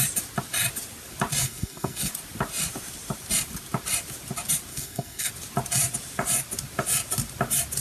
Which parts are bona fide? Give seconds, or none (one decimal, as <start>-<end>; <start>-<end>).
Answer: 0.0-1.4; 2.1-4.7; 5.3-7.8